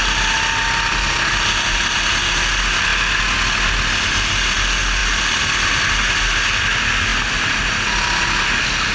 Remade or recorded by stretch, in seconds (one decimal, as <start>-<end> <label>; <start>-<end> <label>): 0.0-8.9 recorded